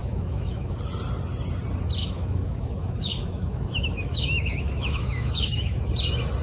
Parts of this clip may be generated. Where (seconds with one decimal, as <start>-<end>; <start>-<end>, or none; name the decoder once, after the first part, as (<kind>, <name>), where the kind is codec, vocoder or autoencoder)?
0.0-0.8 (autoencoder, DAC-VAE); 2.0-5.8